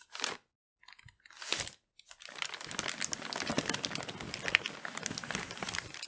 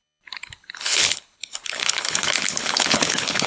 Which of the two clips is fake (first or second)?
second